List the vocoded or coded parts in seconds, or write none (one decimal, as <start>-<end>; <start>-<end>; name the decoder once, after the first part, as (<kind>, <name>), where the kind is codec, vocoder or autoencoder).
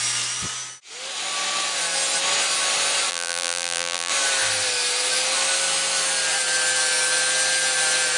3.1-4.1 (vocoder, BigVGAN v2)